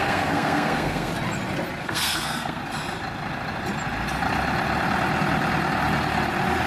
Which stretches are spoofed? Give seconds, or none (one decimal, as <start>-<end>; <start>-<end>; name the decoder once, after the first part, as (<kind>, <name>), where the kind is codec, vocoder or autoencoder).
0.0-1.1 (codec, SNAC); 1.8-2.6